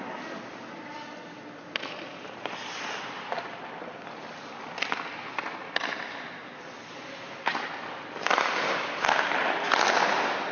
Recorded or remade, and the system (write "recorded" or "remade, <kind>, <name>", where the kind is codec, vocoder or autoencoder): recorded